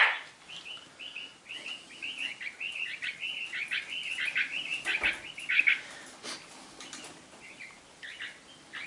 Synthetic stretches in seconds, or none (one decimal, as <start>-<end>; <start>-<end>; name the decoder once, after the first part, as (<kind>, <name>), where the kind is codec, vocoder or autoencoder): none